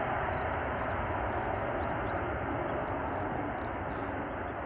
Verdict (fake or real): real